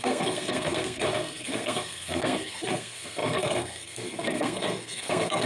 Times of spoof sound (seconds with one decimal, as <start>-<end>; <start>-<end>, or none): 0.0-5.5